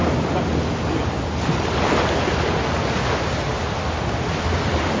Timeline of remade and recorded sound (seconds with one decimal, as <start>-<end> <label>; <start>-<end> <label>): 0.0-5.0 recorded